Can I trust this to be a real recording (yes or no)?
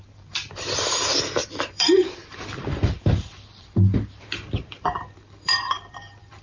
no